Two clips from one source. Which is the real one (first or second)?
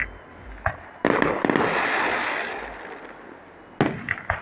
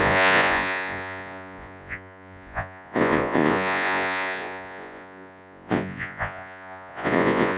first